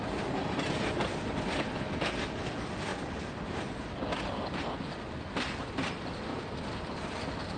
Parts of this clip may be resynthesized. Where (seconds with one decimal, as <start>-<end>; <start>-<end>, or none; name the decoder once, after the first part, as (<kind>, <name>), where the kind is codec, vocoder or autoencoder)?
none